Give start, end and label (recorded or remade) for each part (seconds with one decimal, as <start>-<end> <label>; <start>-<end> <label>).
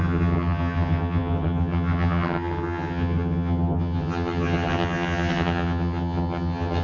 0.0-6.8 remade